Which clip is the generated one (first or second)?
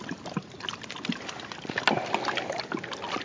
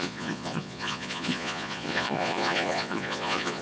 second